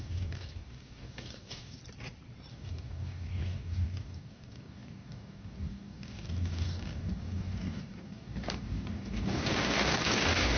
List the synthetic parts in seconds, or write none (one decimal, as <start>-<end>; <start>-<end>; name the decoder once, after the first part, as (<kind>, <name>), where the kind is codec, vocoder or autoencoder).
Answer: 0.0-1.8 (codec, DAC); 2.5-10.6